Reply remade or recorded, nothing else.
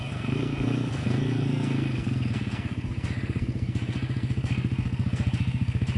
remade